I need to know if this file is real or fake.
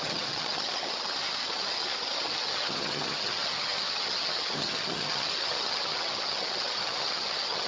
fake